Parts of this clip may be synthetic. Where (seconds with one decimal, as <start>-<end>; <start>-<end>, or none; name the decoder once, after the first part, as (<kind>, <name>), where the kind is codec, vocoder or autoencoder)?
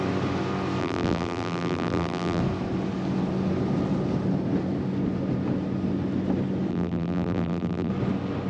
0.8-2.4 (vocoder, BigVGAN v2); 6.7-7.9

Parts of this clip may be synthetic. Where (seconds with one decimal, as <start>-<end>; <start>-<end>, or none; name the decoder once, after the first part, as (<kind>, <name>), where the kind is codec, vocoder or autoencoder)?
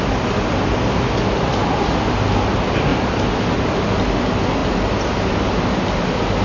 1.6-2.2 (vocoder, BigVGAN v2)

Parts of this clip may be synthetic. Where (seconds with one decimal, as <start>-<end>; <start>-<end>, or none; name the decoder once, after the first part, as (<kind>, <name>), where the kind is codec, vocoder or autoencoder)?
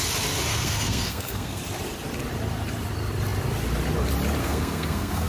0.5-1.6 (codec, SNAC); 4.4-5.3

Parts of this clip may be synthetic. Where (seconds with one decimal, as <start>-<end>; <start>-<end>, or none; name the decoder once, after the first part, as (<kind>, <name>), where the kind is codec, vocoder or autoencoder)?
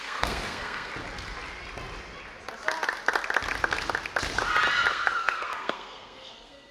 0.0-0.9 (codec, SNAC); 4.9-6.7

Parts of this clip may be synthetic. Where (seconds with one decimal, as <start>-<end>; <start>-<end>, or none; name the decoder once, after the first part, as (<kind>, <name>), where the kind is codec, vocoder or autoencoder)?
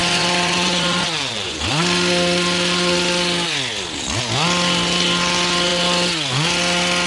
0.0-1.7 (vocoder, Vocos)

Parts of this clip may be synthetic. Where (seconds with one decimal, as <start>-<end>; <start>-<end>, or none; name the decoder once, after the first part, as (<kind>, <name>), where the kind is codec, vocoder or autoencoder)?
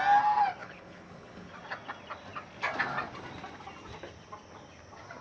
0.6-1.5 (codec, HILCodec)